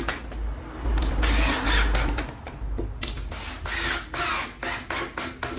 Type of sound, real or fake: real